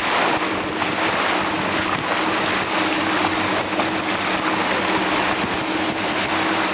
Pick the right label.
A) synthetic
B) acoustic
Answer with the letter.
B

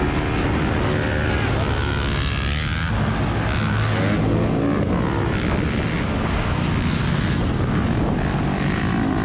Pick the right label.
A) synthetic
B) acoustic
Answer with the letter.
B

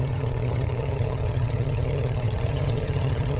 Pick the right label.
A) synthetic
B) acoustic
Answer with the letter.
A